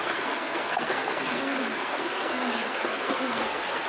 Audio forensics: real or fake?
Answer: fake